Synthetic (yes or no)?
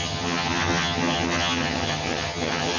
yes